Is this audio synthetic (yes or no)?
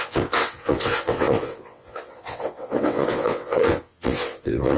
yes